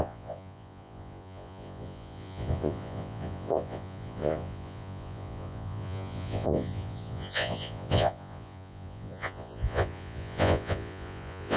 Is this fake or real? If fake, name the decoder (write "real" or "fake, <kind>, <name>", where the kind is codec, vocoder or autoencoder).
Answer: fake, vocoder, Vocos